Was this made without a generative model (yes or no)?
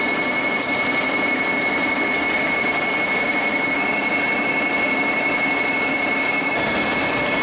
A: yes